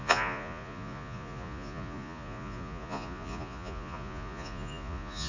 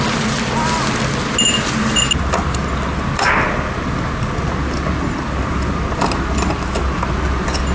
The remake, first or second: first